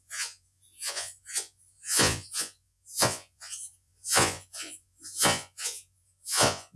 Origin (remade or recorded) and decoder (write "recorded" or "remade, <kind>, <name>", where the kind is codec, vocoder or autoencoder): remade, vocoder, Vocos